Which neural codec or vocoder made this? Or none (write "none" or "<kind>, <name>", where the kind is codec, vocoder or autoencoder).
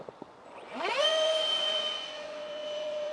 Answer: vocoder, Vocos